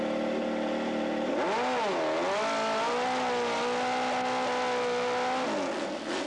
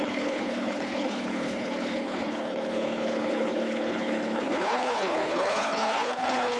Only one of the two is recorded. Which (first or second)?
first